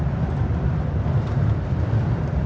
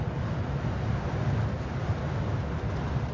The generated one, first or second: first